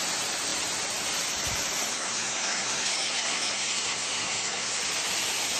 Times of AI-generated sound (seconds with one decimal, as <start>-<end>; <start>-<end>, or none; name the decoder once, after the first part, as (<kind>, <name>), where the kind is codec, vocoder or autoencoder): 1.9-4.8 (codec, SNAC)